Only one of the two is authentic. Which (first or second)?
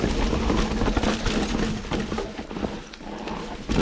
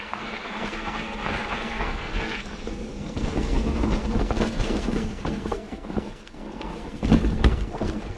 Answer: first